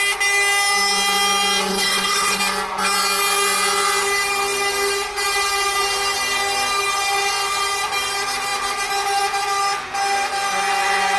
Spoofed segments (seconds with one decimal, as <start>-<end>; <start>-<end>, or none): 1.7-2.4